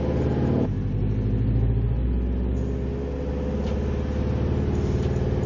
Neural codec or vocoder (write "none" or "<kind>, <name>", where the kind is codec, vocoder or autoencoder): none